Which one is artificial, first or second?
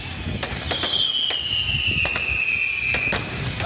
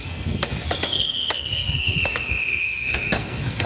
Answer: second